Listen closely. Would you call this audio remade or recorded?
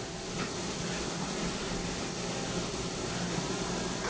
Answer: recorded